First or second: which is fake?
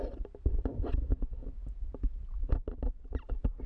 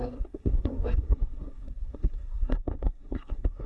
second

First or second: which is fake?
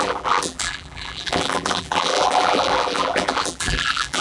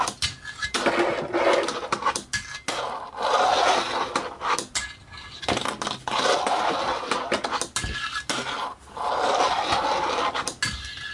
first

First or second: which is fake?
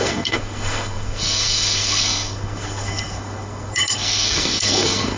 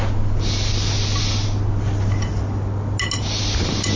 first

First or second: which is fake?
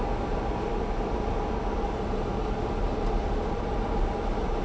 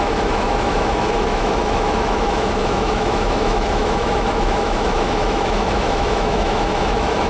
second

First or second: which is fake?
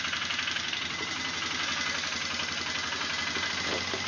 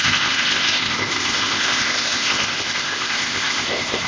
second